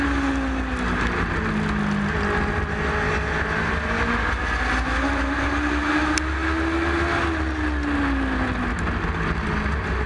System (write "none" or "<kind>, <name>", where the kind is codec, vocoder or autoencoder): none